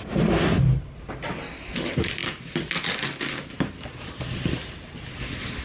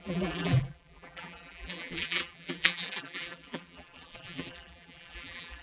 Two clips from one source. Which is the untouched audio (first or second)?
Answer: first